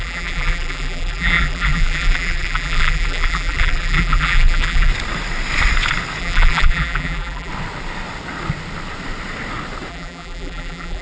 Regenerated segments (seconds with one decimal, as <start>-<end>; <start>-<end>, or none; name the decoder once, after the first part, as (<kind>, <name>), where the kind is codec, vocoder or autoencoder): 0.0-4.9 (vocoder, BigVGAN v2); 6.2-7.5; 9.9-11.0